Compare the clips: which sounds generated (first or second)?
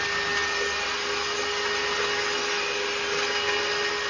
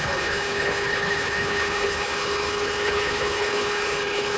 second